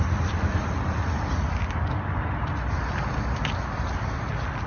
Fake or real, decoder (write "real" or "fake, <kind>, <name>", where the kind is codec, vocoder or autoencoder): real